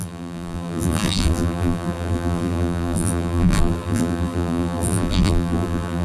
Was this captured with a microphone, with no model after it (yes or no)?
no